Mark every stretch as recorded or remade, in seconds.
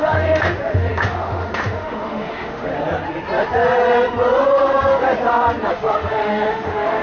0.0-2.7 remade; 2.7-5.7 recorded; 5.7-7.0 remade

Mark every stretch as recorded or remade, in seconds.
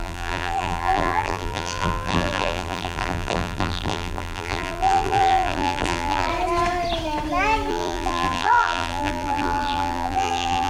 0.0-6.3 remade; 6.3-7.7 recorded; 7.7-10.7 remade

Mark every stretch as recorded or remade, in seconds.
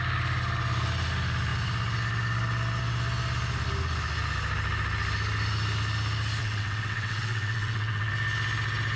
0.0-6.4 recorded; 6.4-8.1 remade; 8.1-9.0 recorded